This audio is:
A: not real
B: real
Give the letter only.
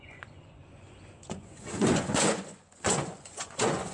A